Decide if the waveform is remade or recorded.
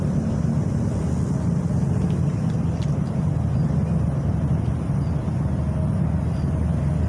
recorded